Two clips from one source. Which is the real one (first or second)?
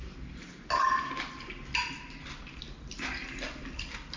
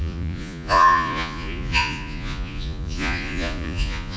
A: first